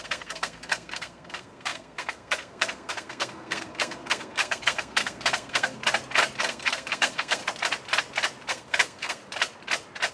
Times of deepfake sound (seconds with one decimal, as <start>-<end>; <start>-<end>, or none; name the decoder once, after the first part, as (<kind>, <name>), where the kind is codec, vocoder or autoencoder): 0.0-5.8 (codec, SNAC); 6.4-7.4; 8.5-9.2